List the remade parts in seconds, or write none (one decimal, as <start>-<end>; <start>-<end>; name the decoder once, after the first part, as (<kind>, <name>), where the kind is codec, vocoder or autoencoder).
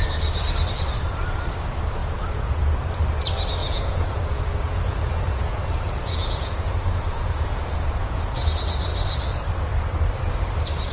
2.0-2.7 (vocoder, Vocos); 3.6-8.3